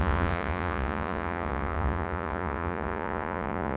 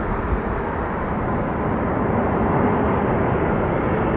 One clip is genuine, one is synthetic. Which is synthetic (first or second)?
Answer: first